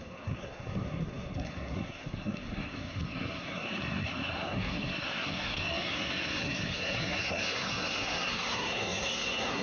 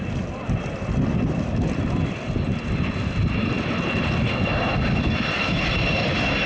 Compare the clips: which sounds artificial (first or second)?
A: first